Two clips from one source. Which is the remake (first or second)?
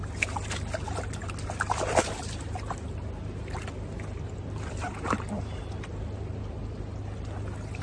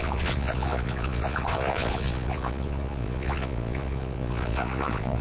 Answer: second